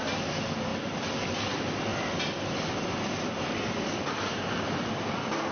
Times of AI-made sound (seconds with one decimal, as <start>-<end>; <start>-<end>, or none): none